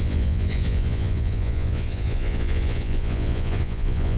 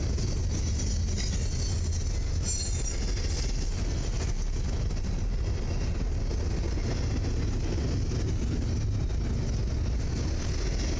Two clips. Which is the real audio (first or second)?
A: second